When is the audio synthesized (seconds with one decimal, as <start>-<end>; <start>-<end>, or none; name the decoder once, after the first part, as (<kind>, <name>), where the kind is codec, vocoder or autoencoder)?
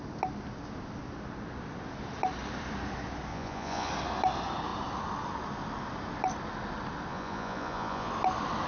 3.3-3.9 (vocoder, Vocos); 7.1-8.1